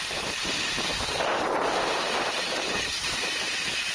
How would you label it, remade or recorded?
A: remade